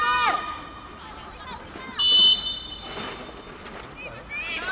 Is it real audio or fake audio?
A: real